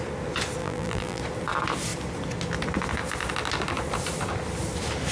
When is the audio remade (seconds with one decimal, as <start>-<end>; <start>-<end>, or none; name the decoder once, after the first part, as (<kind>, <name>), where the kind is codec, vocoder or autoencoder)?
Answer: 0.6-1.2 (vocoder, BigVGAN v2)